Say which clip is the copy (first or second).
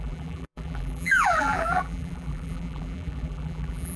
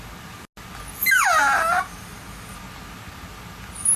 first